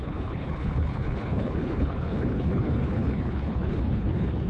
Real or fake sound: fake